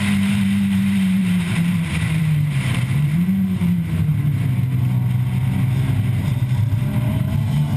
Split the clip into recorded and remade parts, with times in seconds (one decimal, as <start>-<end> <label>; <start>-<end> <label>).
0.0-4.1 remade; 4.1-6.2 recorded; 6.2-7.8 remade